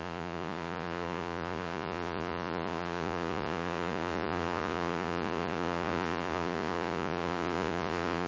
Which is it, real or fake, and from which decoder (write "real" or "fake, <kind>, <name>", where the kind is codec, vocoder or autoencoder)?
fake, vocoder, Vocos